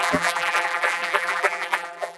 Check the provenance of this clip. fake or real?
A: fake